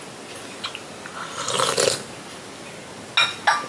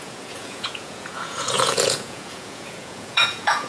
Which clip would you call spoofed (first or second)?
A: second